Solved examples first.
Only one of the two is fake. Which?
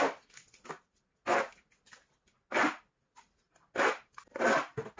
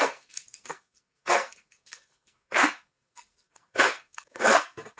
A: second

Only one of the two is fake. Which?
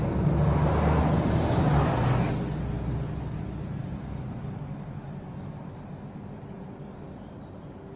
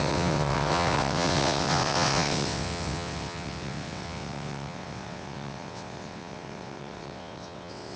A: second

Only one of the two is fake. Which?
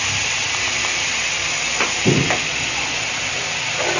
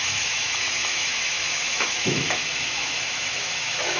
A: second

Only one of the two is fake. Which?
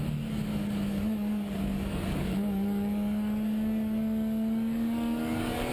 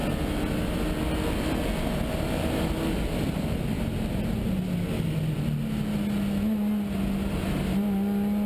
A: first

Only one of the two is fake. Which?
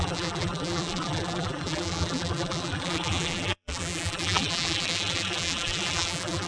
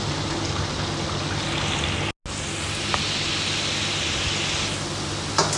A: first